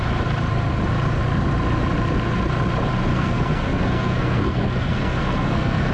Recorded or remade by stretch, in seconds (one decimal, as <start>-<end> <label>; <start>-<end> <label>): 0.0-3.1 recorded; 3.1-5.9 remade